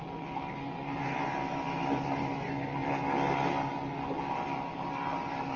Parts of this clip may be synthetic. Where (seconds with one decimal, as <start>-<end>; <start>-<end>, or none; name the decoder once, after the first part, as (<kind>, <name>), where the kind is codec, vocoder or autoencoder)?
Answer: none